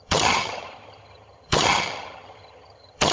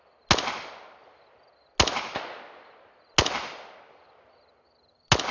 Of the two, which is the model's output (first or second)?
first